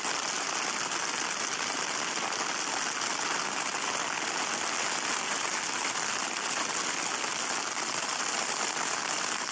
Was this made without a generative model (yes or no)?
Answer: yes